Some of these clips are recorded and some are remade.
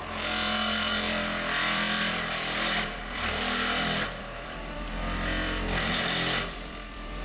remade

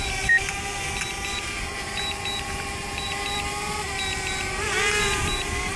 remade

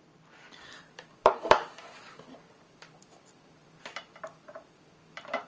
remade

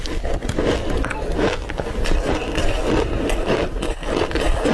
recorded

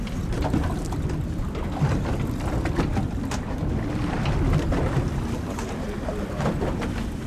recorded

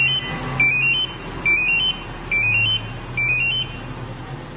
recorded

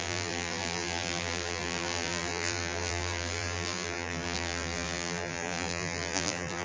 remade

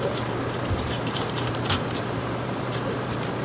remade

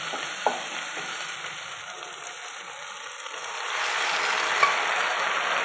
recorded